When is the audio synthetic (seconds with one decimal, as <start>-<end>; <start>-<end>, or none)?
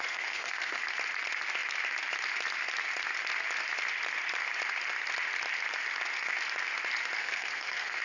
0.0-0.8; 7.2-8.0